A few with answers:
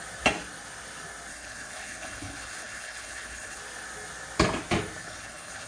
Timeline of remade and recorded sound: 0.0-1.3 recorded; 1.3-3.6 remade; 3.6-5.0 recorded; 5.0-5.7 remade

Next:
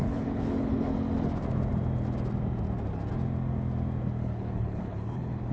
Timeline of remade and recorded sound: 0.0-0.9 remade; 0.9-4.2 recorded; 4.2-5.5 remade

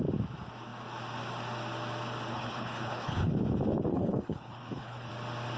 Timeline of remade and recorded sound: 0.0-2.3 recorded; 2.3-3.3 remade; 3.3-3.9 recorded; 3.9-5.1 remade; 5.1-5.6 recorded